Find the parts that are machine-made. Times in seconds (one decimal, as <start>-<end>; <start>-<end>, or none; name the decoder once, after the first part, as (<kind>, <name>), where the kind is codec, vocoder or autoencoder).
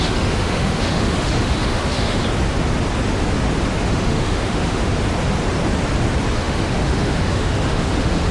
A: 0.0-2.2 (autoencoder, DAC-VAE); 3.8-4.8; 6.3-8.3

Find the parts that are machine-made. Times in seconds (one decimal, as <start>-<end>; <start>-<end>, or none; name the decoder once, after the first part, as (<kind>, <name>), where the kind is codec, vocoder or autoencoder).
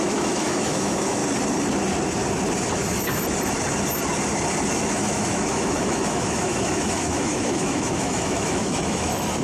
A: 0.0-1.2 (autoencoder, DAC-VAE); 4.7-9.4